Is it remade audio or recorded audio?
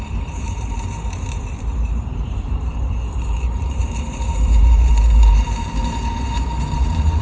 remade